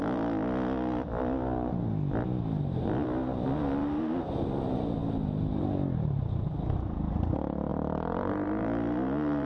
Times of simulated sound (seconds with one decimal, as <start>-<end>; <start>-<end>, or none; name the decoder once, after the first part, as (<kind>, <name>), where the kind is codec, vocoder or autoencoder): 3.8-4.4 (vocoder, BigVGAN v2); 7.7-9.5